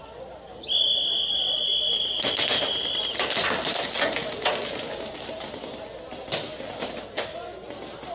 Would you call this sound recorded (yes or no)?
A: yes